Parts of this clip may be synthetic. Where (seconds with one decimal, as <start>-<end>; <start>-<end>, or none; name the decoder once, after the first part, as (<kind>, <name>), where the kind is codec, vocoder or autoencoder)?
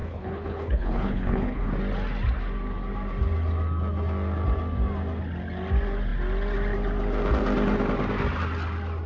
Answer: 0.0-1.7 (codec, HILCodec)